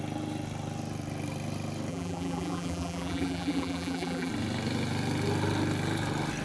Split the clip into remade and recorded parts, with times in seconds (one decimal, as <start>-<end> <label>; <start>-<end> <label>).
0.0-1.9 recorded; 1.9-4.3 remade; 4.3-6.4 recorded